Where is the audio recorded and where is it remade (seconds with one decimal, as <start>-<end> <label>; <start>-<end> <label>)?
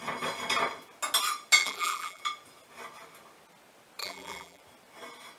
0.0-1.6 recorded; 1.6-2.2 remade; 2.2-4.0 recorded; 4.0-4.6 remade; 4.6-5.4 recorded